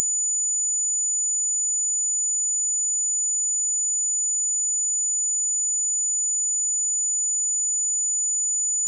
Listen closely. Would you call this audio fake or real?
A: real